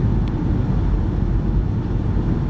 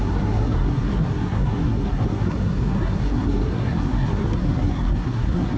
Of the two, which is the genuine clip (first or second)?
first